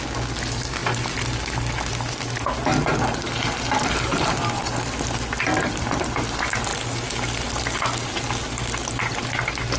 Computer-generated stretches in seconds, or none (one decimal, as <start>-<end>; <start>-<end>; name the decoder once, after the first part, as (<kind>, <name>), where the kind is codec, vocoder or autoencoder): none